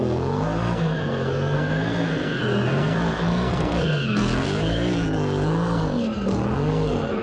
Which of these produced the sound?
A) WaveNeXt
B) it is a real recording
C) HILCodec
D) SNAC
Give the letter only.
D